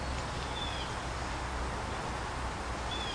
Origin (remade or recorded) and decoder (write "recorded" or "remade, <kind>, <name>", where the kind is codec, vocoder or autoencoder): recorded